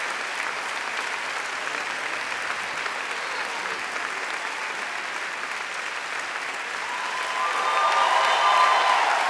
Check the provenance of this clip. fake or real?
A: real